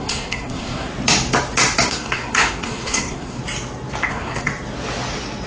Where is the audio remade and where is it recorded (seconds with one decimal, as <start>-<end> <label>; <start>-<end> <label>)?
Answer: 0.0-0.9 remade; 0.9-1.9 recorded; 1.9-3.4 remade; 3.4-4.1 recorded; 4.1-4.5 remade; 4.5-5.5 recorded